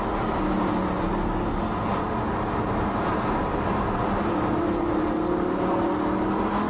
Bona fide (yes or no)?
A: yes